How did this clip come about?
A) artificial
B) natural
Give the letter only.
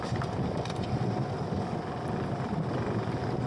B